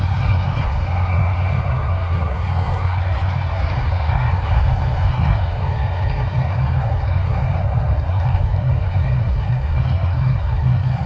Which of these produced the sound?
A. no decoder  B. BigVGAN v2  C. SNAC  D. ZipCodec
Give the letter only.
C